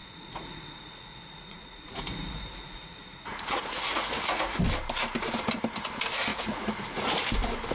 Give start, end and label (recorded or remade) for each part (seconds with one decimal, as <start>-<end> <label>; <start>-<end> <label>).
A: 0.0-4.6 remade; 4.6-6.3 recorded; 6.3-7.0 remade; 7.0-7.7 recorded